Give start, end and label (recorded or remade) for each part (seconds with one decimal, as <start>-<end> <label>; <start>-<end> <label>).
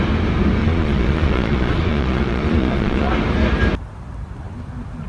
0.0-0.6 recorded; 0.6-3.1 remade; 3.1-5.1 recorded